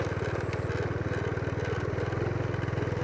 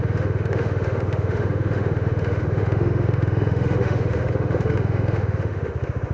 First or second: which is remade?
second